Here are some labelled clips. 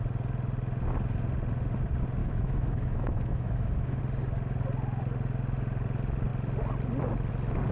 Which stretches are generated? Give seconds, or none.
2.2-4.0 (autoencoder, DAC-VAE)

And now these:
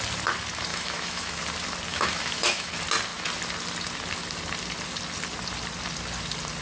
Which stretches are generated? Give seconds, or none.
0.7-1.4 (autoencoder, DAC-VAE); 1.9-2.7

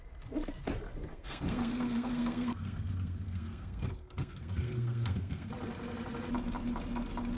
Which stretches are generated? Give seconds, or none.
1.1-5.5 (codec, SNAC)

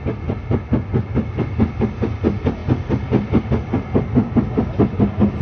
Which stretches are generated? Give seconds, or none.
none

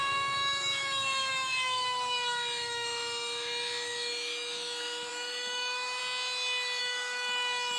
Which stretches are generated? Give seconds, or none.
0.0-6.0 (autoencoder, DAC-VAE); 6.8-7.8

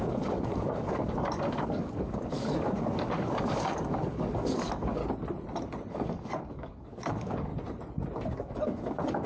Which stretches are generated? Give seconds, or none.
0.0-5.0 (codec, DAC); 5.9-7.5; 8.3-9.3

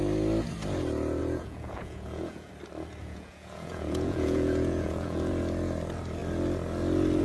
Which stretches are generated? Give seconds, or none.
1.2-2.5 (vocoder, Vocos); 3.0-5.3

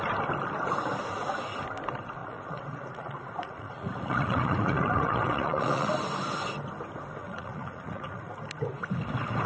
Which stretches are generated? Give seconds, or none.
2.2-5.9 (vocoder, Vocos); 7.2-8.3